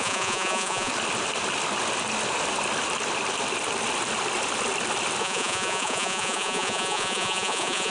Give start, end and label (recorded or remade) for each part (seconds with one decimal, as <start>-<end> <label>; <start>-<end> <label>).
0.0-0.9 remade; 0.9-5.2 recorded; 5.2-7.9 remade